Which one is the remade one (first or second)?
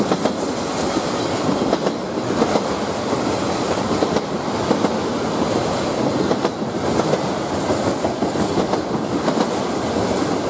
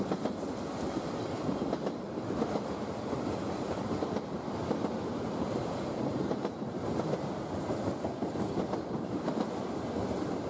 second